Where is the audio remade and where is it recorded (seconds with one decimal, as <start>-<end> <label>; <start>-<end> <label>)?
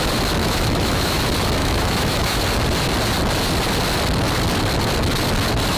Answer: 0.0-0.4 recorded; 0.4-1.2 remade; 1.2-1.6 recorded; 1.6-2.4 remade; 2.4-5.8 recorded